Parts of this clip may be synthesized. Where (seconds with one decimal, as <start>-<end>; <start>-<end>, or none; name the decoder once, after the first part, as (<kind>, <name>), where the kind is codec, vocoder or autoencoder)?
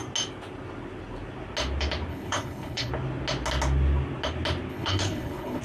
2.1-2.9 (codec, HILCodec); 4.7-5.6